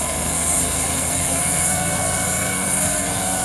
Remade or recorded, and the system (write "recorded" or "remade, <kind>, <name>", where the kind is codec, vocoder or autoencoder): remade, codec, SNAC